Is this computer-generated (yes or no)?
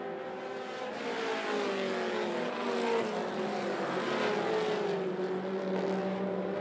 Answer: no